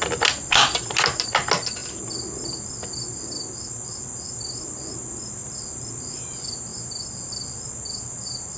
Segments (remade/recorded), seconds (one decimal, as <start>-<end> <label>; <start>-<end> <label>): 0.0-8.6 recorded